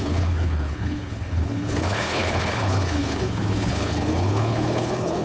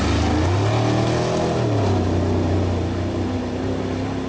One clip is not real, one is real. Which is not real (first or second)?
first